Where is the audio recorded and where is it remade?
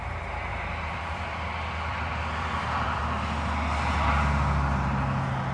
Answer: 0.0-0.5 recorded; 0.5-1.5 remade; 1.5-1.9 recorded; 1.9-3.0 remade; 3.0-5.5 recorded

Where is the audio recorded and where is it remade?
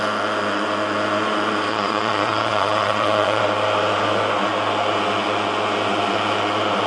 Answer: 0.0-1.7 recorded; 1.7-3.4 remade; 3.4-6.9 recorded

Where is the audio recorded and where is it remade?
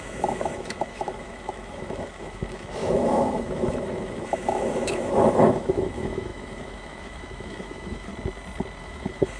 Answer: 0.0-8.1 remade; 8.1-8.8 recorded; 8.8-9.4 remade